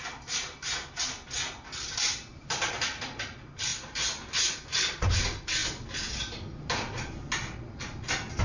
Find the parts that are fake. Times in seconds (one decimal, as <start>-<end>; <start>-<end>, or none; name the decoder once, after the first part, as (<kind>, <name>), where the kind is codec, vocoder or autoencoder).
none